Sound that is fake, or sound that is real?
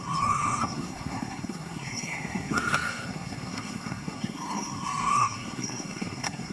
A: fake